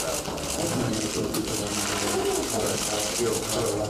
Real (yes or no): yes